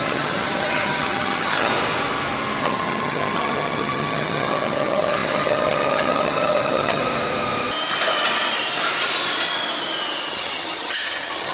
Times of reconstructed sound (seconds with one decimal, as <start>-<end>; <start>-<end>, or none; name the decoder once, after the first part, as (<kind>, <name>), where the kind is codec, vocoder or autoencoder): 0.0-1.7 (vocoder, HiFi-GAN); 2.6-7.0; 10.3-11.5